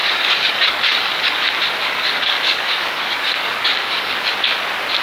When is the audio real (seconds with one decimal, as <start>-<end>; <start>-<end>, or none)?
1.4-1.8; 4.3-5.0